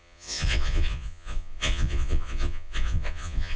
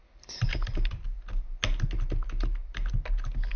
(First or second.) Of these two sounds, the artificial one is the first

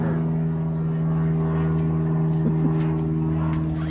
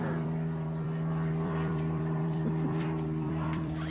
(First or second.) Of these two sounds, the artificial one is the second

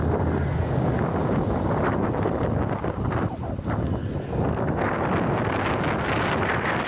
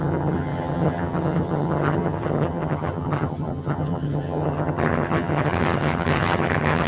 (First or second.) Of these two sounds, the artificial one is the second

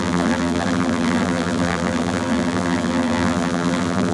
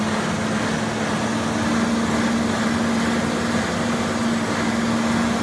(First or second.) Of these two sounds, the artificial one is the first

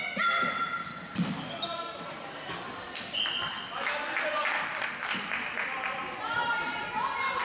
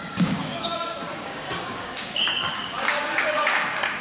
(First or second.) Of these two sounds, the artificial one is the second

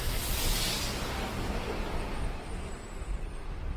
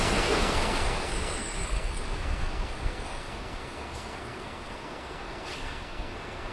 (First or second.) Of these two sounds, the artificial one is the second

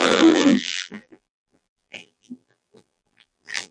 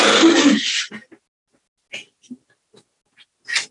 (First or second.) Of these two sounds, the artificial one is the first